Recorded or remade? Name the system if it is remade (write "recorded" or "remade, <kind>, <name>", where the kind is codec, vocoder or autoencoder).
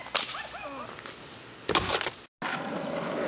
recorded